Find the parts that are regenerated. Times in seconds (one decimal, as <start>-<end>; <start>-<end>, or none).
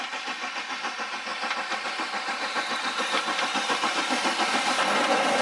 1.3-3.8